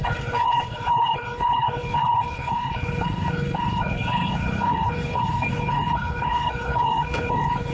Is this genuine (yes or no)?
no